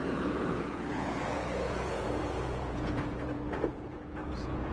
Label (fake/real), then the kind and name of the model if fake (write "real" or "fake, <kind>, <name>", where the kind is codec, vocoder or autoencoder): fake, vocoder, Vocos